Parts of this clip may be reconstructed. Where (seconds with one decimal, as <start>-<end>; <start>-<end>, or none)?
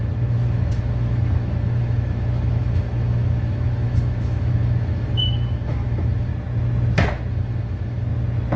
0.0-6.3; 7.3-8.1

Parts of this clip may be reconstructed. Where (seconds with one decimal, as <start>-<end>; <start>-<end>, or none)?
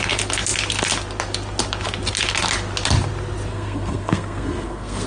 3.5-5.1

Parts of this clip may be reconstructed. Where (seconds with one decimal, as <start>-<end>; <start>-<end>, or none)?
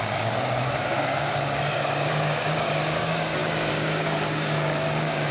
0.0-5.3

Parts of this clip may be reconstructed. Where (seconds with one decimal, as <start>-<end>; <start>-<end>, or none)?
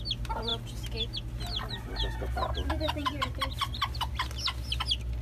none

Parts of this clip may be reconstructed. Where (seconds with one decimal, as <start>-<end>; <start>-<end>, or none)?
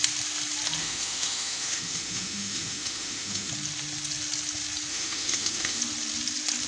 0.8-3.5; 4.9-5.8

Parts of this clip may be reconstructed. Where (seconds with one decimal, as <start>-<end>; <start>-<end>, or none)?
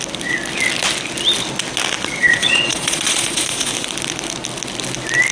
2.2-3.7